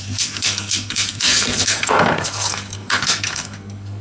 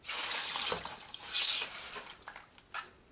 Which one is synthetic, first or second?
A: first